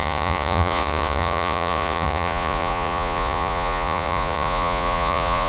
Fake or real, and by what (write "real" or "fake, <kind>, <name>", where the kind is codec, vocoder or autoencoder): fake, vocoder, Vocos